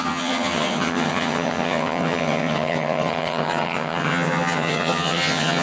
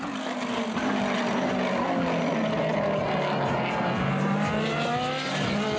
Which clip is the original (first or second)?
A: second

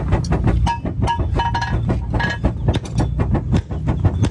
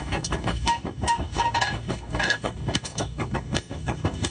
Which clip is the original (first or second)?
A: first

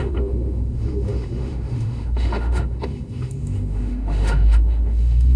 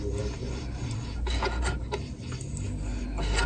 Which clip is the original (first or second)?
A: second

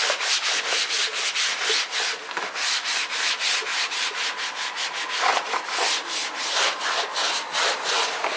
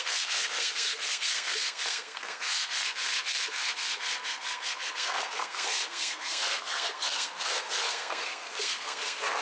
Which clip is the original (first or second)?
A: first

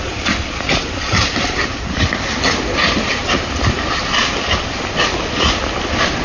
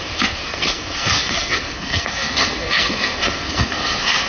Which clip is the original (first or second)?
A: first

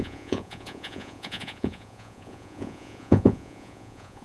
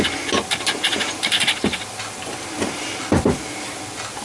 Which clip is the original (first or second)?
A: second